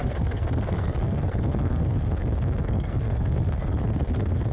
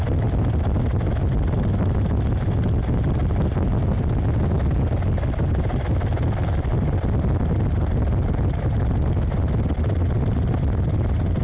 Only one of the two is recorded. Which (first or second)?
second